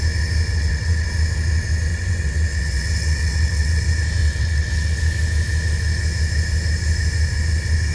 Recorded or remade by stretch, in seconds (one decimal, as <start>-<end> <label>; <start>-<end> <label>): 0.0-0.5 recorded; 0.5-1.1 remade; 1.1-1.9 recorded; 1.9-3.8 remade; 3.8-4.2 recorded; 4.2-5.0 remade; 5.0-7.9 recorded